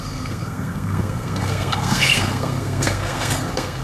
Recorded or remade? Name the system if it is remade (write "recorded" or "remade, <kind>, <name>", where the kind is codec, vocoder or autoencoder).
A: remade, codec, SNAC